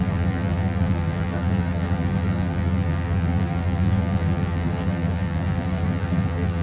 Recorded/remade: remade